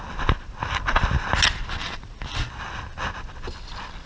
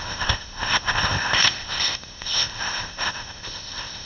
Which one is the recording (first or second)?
first